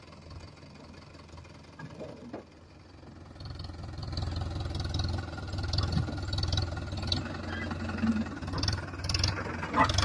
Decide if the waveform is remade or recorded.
recorded